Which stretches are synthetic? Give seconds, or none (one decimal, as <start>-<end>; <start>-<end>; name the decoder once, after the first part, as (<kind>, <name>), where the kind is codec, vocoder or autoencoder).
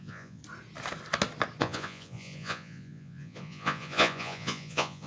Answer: 0.0-0.4 (vocoder, Vocos); 1.6-5.1